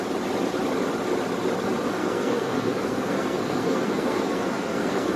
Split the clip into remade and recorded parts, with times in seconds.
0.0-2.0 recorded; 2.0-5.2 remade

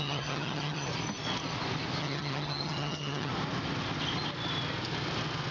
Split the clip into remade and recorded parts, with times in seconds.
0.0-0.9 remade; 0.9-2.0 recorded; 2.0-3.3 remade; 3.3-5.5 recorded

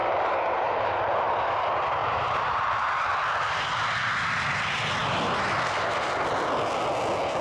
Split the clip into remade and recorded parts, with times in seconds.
0.0-1.3 remade; 1.3-2.0 recorded; 2.0-3.1 remade; 3.1-7.4 recorded

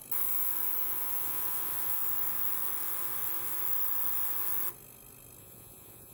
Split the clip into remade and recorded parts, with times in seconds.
0.0-0.8 recorded; 0.8-2.0 remade; 2.0-5.4 recorded; 5.4-6.1 remade